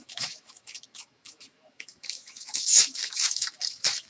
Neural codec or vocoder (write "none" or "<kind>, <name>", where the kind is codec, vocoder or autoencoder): autoencoder, DAC-VAE